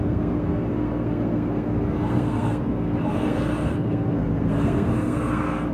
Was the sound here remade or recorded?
remade